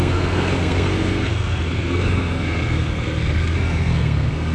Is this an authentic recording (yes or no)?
no